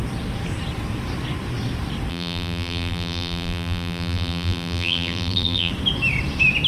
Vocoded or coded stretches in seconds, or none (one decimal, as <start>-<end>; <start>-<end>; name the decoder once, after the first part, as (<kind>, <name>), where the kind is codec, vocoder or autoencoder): 2.1-5.7 (vocoder, BigVGAN v2)